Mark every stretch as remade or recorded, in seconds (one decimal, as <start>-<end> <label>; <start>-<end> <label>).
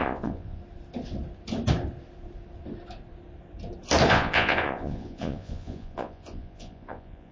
0.0-0.6 remade; 0.6-4.1 recorded; 4.1-7.3 remade